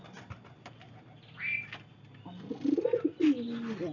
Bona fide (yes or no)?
yes